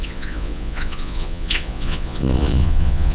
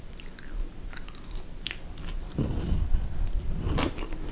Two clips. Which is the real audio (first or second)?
second